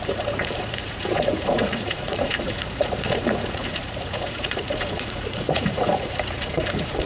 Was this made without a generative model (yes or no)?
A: no